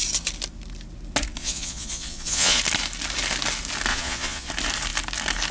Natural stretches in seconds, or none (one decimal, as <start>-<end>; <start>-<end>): 0.0-1.4; 2.6-3.9; 4.5-5.5